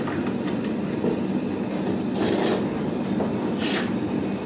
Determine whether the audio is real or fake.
real